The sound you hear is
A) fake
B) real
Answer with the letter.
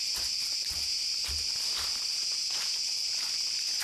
B